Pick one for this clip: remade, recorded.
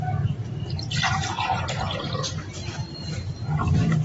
remade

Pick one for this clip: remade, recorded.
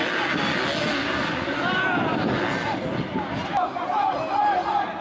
recorded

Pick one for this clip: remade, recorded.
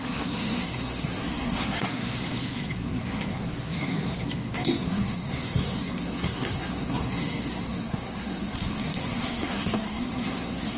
remade